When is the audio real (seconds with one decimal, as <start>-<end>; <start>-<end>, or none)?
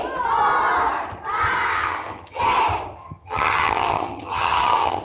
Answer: 0.0-1.7; 2.4-3.0